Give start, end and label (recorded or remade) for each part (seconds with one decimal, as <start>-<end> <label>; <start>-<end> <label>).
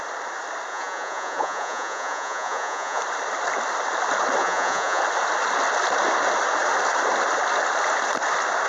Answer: 0.0-0.7 recorded; 0.7-3.0 remade; 3.0-4.4 recorded; 4.4-5.0 remade; 5.0-8.7 recorded